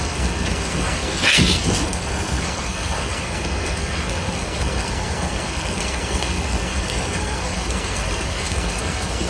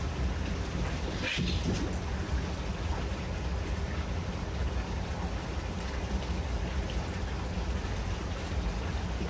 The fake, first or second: first